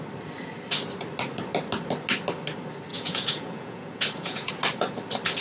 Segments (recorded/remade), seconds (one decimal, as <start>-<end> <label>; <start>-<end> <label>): 0.0-2.9 recorded; 2.9-4.5 remade; 4.5-5.4 recorded